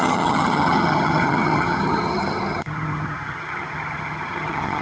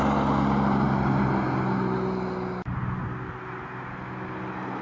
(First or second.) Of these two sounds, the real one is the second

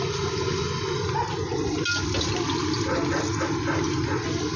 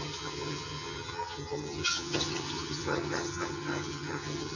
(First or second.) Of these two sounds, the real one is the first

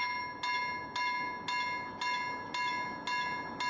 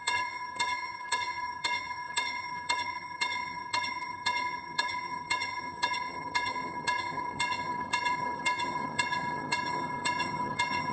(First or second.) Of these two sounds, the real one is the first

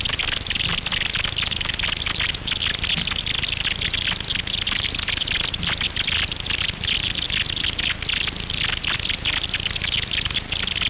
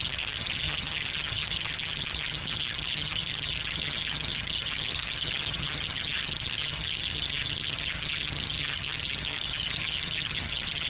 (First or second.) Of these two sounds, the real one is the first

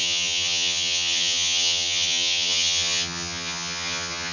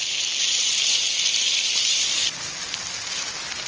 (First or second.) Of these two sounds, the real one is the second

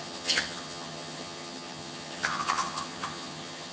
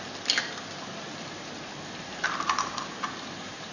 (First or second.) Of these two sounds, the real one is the second